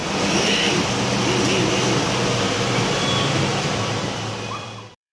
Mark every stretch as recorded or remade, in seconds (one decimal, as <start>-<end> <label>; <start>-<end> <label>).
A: 0.0-5.1 remade